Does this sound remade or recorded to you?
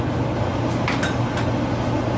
recorded